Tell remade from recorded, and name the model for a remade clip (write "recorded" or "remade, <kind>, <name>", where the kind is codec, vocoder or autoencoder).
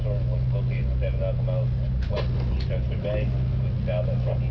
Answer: recorded